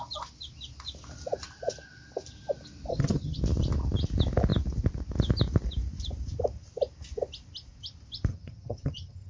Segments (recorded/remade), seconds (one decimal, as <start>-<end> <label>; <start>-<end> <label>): 0.0-2.9 recorded; 2.9-3.4 remade; 3.4-8.3 recorded; 8.3-9.3 remade